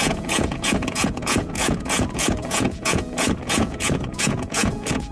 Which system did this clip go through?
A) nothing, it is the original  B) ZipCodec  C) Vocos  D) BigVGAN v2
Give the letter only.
C